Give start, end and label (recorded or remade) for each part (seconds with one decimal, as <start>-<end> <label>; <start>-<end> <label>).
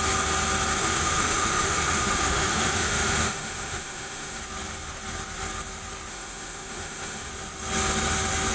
0.0-0.8 recorded; 0.8-4.4 remade; 4.4-6.1 recorded; 6.1-7.3 remade; 7.3-8.5 recorded